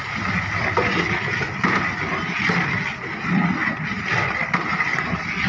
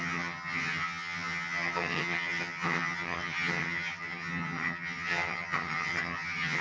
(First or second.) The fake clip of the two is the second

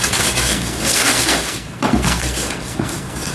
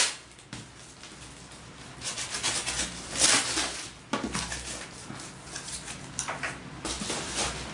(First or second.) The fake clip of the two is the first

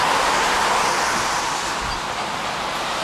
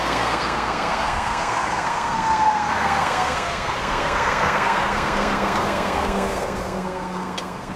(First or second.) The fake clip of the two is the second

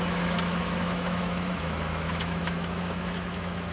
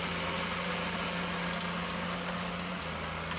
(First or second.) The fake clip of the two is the first